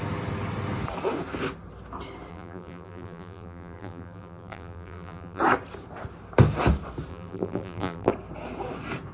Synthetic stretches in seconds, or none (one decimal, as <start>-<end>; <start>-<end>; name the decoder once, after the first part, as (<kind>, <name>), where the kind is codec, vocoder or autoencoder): 2.3-5.4 (vocoder, BigVGAN v2); 7.1-8.1